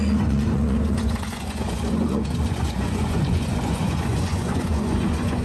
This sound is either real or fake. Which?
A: fake